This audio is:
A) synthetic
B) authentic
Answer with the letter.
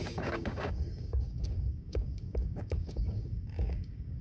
A